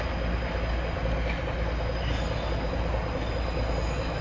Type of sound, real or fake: real